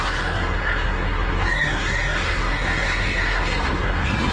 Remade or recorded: remade